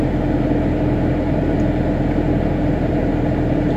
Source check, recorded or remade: recorded